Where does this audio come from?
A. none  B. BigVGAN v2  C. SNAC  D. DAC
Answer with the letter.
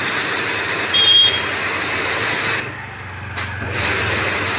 B